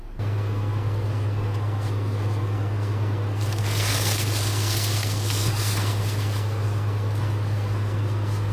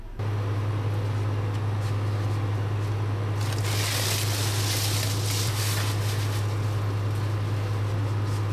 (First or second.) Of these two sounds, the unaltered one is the second